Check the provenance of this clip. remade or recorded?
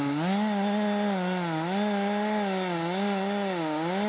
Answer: recorded